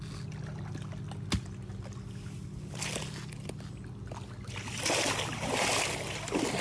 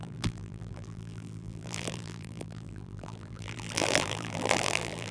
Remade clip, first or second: second